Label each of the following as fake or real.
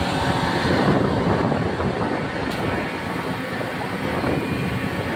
real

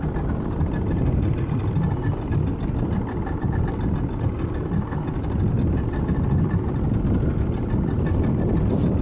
real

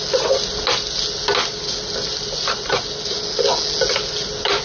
real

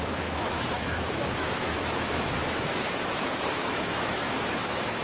fake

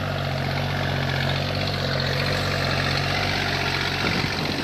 real